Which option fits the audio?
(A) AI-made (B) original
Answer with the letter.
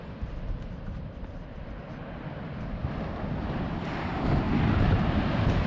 B